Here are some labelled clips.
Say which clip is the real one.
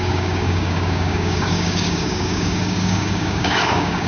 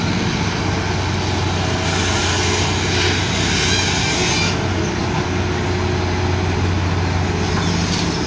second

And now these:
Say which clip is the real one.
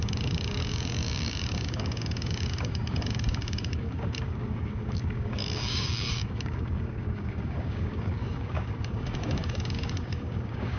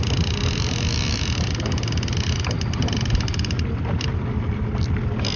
second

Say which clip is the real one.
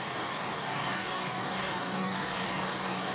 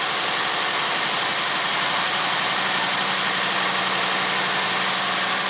second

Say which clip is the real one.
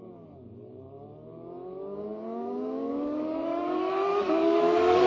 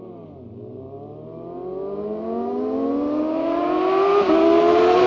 second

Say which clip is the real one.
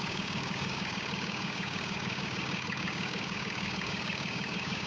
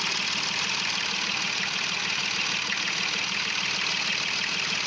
second